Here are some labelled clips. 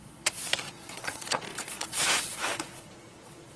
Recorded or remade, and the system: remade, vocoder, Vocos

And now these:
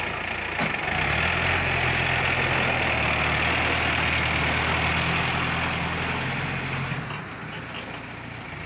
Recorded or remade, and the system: recorded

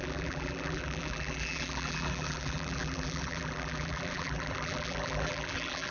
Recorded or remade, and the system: remade, vocoder, BigVGAN v2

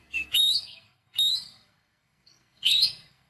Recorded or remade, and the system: remade, codec, SNAC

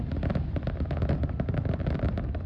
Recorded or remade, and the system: recorded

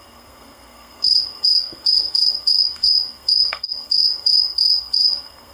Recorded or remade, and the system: remade, codec, SNAC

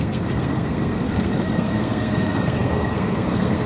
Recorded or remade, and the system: remade, codec, SNAC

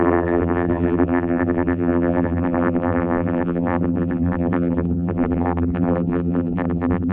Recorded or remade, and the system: remade, vocoder, BigVGAN v2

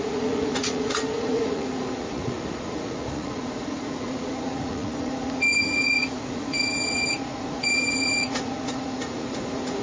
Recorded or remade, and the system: remade, vocoder, Vocos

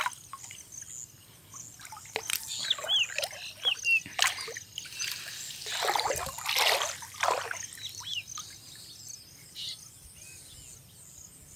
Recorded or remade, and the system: recorded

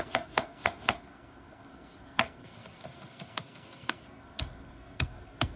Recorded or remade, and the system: remade, codec, SNAC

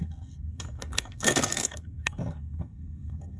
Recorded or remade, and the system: remade, codec, SNAC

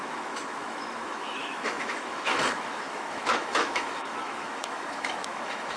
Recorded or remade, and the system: remade, autoencoder, DAC-VAE